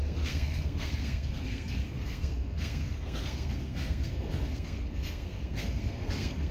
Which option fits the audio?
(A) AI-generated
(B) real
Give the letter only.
A